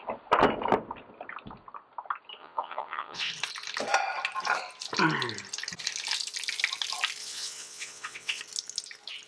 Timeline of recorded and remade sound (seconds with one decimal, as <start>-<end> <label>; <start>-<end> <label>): 0.0-2.4 recorded; 2.4-3.3 remade; 3.3-7.2 recorded; 7.2-8.4 remade; 8.4-9.3 recorded